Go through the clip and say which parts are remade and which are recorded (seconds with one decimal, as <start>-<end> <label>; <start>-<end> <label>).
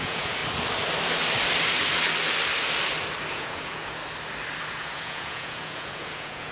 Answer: 0.0-0.4 remade; 0.4-3.3 recorded; 3.3-4.0 remade; 4.0-4.7 recorded; 4.7-6.5 remade